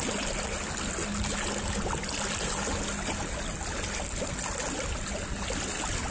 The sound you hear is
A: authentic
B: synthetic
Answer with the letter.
A